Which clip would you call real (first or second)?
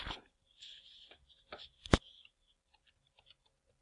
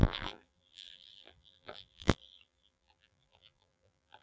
first